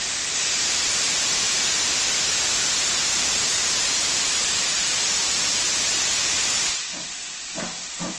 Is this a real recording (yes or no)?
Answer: no